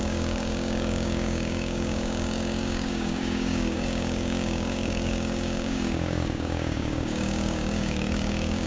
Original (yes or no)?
no